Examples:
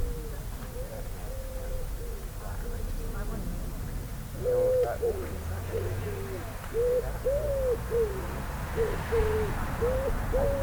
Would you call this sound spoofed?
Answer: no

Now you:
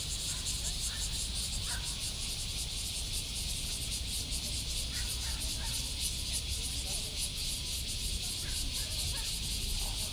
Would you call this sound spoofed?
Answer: no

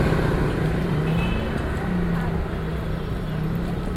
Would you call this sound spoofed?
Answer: no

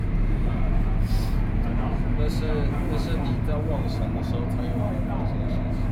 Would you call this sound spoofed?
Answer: no